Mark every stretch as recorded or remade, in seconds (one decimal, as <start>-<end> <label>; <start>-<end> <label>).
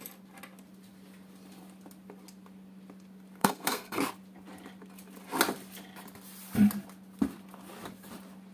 0.0-3.4 recorded; 3.4-4.0 remade; 4.0-8.5 recorded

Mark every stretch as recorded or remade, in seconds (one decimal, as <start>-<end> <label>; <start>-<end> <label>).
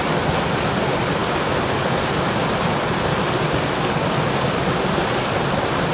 0.0-5.9 recorded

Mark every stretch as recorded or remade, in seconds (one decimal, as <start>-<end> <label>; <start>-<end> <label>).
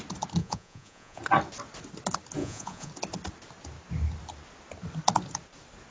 0.0-0.4 recorded; 0.4-1.2 remade; 1.2-2.4 recorded; 2.4-2.9 remade; 2.9-5.9 recorded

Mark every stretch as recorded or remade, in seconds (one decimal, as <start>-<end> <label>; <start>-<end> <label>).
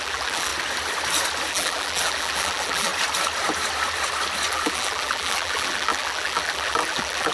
0.0-0.5 remade; 0.5-1.5 recorded; 1.5-2.9 remade; 2.9-4.5 recorded; 4.5-7.3 remade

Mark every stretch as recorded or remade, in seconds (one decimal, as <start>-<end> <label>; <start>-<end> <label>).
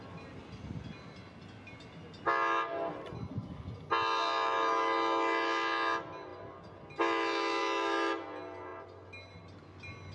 0.0-10.1 recorded